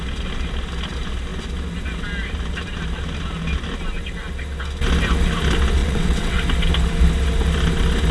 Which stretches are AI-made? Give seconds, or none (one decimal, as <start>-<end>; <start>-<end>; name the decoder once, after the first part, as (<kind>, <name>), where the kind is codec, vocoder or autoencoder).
5.8-6.4 (vocoder, WaveNeXt)